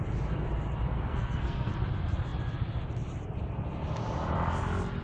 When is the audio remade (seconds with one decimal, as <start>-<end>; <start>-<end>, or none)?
0.9-1.7